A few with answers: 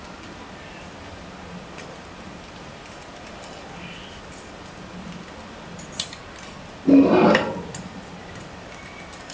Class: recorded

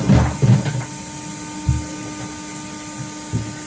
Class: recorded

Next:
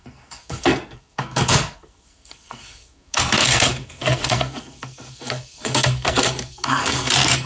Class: remade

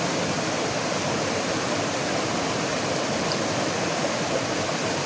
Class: recorded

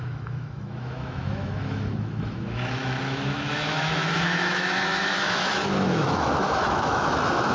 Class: remade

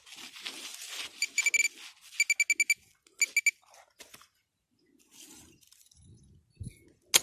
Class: recorded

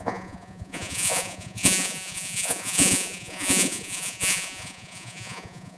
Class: remade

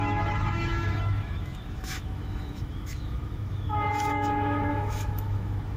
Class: remade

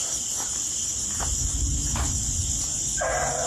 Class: recorded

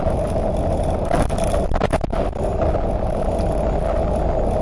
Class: recorded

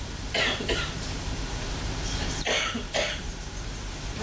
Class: remade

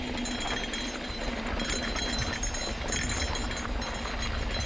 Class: recorded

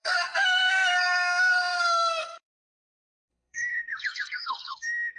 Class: remade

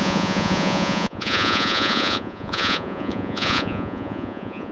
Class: remade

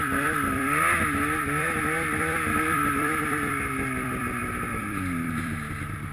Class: remade